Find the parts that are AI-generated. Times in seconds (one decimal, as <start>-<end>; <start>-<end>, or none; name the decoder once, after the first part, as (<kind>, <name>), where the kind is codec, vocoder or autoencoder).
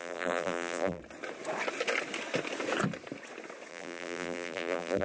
0.0-1.0 (vocoder, BigVGAN v2); 3.7-5.0